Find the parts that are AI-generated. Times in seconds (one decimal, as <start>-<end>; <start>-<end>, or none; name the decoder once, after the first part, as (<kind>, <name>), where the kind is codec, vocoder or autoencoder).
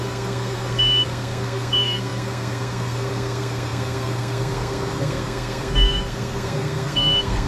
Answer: 0.0-7.5 (codec, SNAC)